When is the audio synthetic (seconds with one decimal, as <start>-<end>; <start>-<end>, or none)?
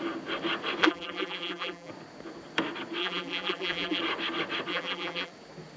0.8-1.9; 3.0-4.0; 4.7-5.3